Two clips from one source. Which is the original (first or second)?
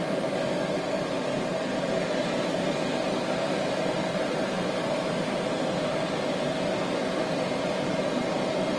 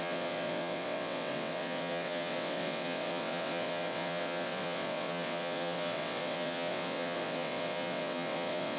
first